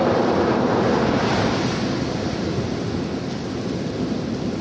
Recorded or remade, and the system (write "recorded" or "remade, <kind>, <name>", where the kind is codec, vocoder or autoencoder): recorded